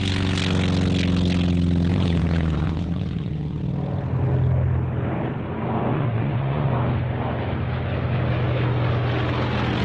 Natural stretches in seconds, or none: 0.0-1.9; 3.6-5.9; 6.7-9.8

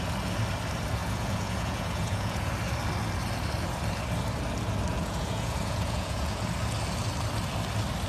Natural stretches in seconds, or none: 0.0-1.0; 2.5-4.9; 6.4-8.1

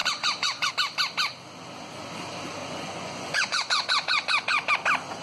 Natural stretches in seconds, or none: 0.7-2.6; 4.7-5.2

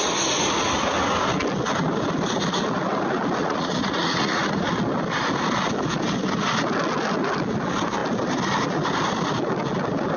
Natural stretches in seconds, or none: 0.0-3.4; 4.7-10.2

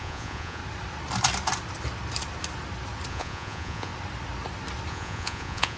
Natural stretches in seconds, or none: 0.6-3.1; 3.9-4.9

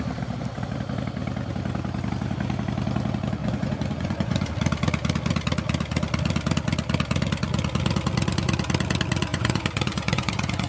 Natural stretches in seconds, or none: 0.0-3.4; 4.5-9.3